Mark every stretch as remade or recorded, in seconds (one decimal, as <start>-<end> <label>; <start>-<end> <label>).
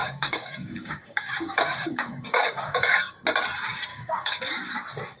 0.0-3.1 remade; 3.1-3.9 recorded; 3.9-4.4 remade; 4.4-5.2 recorded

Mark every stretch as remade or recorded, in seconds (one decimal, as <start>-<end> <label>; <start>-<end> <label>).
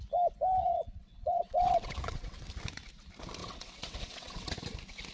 0.0-0.6 recorded; 0.6-2.5 remade; 2.5-3.4 recorded; 3.4-4.6 remade; 4.6-5.1 recorded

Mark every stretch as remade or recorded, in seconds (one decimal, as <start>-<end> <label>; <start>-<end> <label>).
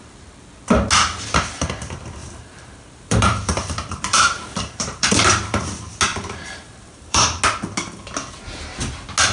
0.0-2.2 recorded; 2.2-5.6 remade; 5.6-6.1 recorded; 6.1-7.4 remade; 7.4-9.3 recorded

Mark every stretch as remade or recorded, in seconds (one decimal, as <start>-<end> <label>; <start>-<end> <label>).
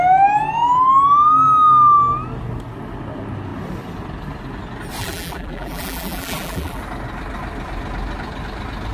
0.0-5.0 recorded; 5.0-6.8 remade; 6.8-8.9 recorded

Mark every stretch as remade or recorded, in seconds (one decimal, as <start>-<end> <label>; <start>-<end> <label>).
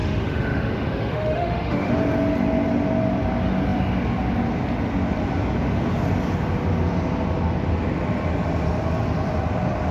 0.0-1.9 remade; 1.9-9.9 recorded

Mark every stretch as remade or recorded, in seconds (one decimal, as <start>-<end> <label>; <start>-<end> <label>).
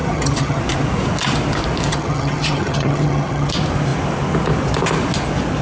0.0-0.6 remade; 0.6-1.9 recorded; 1.9-3.5 remade; 3.5-5.6 recorded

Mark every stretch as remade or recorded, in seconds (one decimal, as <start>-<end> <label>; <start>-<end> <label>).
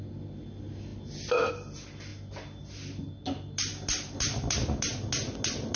0.0-5.8 recorded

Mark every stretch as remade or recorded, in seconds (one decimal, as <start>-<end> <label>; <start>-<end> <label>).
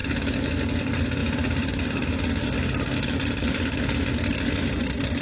0.0-0.5 remade; 0.5-5.2 recorded